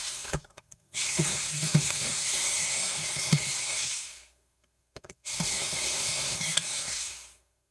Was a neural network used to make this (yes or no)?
yes